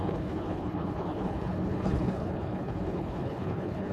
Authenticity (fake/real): fake